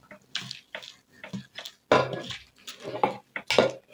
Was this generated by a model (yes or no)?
no